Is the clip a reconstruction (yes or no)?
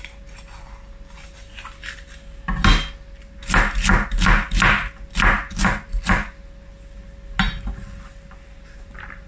no